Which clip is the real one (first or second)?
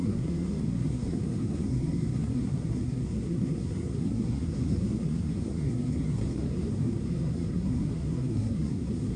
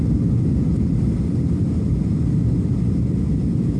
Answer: second